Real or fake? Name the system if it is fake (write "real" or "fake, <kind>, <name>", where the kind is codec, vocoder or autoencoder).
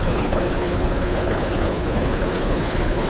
fake, codec, HILCodec